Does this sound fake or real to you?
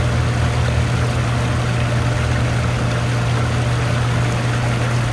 real